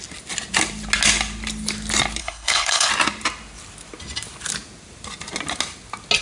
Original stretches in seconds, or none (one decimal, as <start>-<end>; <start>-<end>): 0.0-2.2; 2.9-6.2